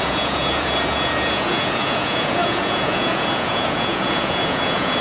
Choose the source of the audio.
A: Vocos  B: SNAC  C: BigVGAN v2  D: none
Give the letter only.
A